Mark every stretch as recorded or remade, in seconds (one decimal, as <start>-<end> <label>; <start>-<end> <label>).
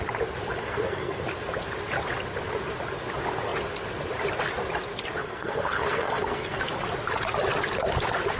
0.0-0.6 recorded; 0.6-1.2 remade; 1.2-5.2 recorded; 5.2-6.6 remade; 6.6-8.4 recorded